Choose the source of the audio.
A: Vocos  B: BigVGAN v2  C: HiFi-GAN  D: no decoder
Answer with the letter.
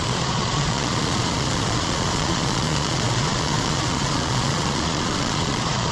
A